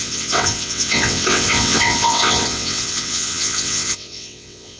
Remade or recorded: remade